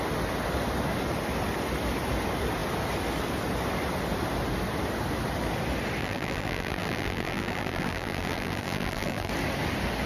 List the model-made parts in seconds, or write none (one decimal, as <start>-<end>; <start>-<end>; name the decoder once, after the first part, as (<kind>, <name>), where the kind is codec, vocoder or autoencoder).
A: 6.0-9.3 (vocoder, BigVGAN v2)